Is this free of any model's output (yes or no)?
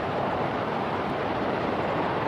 no